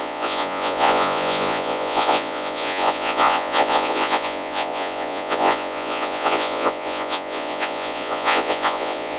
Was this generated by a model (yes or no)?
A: yes